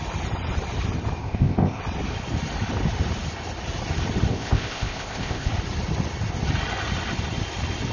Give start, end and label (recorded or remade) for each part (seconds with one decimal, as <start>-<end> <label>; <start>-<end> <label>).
0.0-1.2 recorded; 1.2-1.8 remade; 1.8-4.3 recorded; 4.3-5.5 remade; 5.5-7.9 recorded